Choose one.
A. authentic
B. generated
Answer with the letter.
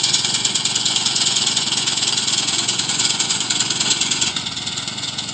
B